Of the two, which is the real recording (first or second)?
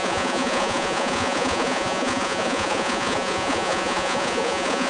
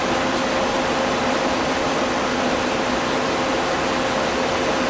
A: second